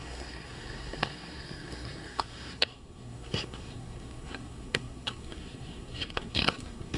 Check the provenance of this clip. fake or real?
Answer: fake